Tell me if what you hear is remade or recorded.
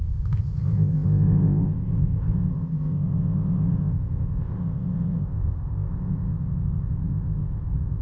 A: remade